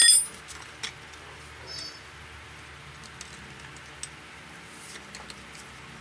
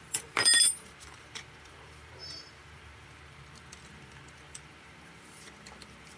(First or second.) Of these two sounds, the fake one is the second